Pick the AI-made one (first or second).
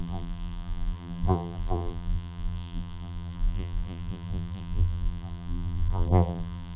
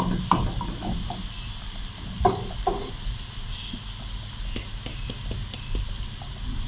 first